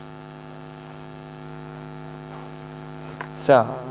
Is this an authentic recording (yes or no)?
no